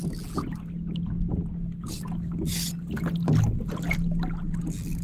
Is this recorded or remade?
recorded